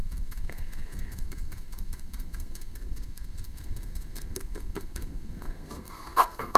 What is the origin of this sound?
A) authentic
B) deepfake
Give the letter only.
B